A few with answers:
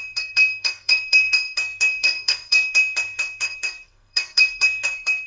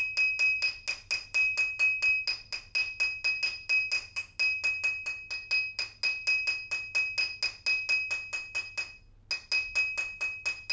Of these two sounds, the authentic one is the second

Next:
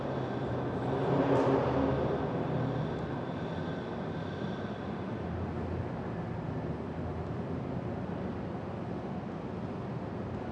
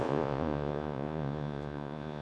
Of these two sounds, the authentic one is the first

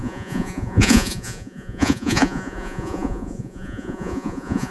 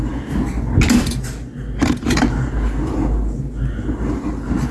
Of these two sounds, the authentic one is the second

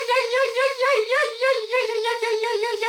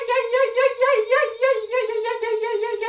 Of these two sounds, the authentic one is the second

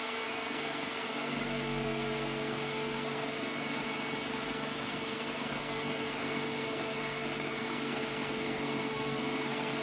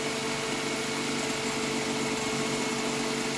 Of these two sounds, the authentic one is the second